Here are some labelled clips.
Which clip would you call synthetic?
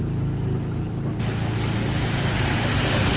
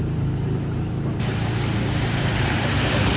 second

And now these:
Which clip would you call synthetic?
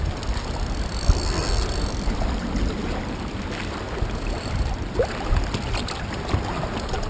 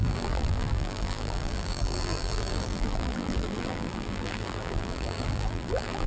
second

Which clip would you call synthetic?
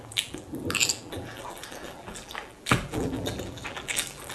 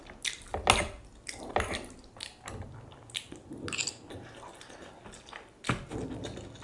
first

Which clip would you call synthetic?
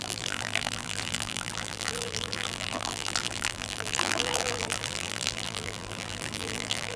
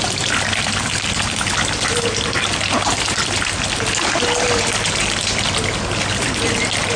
first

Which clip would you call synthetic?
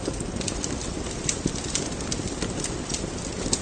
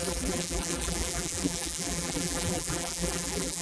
second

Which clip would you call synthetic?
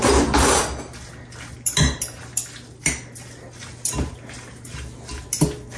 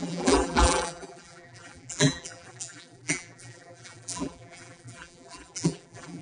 second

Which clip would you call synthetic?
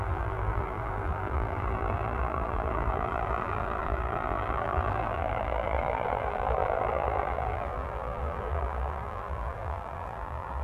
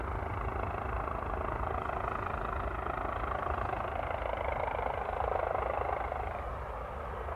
first